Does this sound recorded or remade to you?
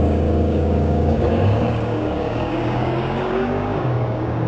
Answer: remade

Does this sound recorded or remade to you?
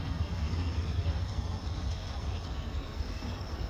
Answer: remade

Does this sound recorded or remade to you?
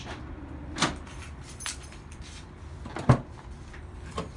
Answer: remade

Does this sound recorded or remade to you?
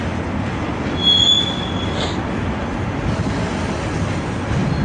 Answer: recorded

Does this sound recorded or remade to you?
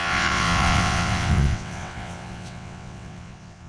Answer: remade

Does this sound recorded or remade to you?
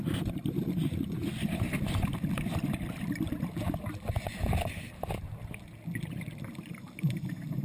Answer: recorded